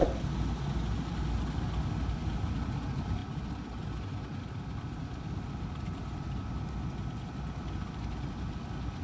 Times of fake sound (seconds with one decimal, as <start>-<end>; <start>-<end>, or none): none

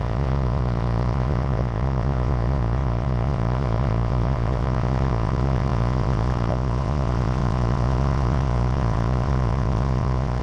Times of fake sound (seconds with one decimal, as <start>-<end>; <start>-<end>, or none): 0.0-10.4

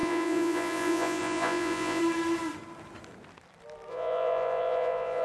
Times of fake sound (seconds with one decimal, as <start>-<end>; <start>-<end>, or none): 0.0-2.0; 3.9-5.2

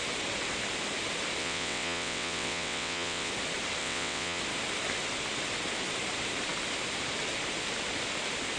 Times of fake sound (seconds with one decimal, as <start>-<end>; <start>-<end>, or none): 1.4-3.3; 3.8-4.4

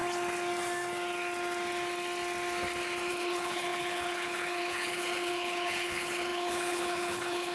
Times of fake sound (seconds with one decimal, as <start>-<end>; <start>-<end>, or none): 3.1-7.5

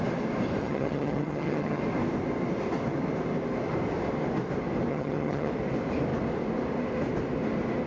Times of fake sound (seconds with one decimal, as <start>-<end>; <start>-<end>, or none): 0.6-1.8; 4.9-5.5

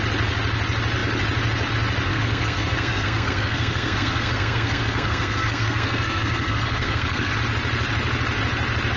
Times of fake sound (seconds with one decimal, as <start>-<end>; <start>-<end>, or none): 2.1-7.3

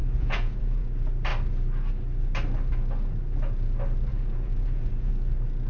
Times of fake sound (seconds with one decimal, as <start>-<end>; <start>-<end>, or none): 0.0-0.9; 4.1-5.1